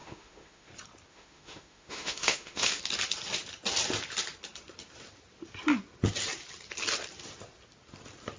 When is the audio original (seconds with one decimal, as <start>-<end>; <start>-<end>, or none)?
0.7-1.1; 2.8-8.4